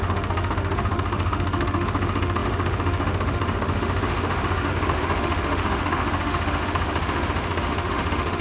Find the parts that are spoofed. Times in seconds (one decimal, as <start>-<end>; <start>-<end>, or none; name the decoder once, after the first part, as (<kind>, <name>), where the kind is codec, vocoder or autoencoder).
0.0-8.4 (autoencoder, DAC-VAE)